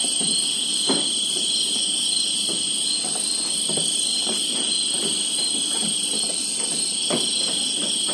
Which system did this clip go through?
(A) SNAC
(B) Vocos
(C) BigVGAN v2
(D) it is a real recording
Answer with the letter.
D